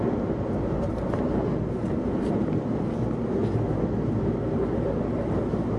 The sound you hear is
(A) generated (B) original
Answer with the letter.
B